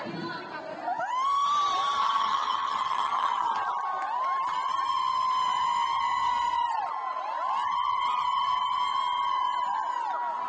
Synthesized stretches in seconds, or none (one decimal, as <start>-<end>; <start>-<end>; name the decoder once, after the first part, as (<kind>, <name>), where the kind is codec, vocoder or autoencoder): 2.0-3.5 (vocoder, HiFi-GAN)